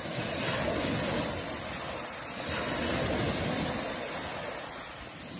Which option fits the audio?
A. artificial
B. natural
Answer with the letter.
B